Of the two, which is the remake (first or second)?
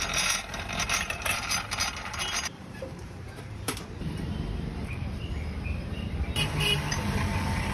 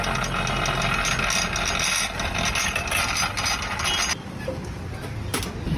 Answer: first